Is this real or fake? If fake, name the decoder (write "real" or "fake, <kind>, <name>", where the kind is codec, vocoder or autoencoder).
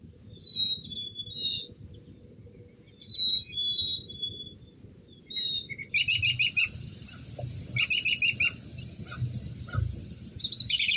real